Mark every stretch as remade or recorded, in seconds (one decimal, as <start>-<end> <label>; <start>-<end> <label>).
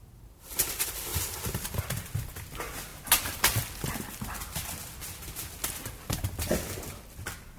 0.0-1.1 recorded; 1.1-1.8 remade; 1.8-7.6 recorded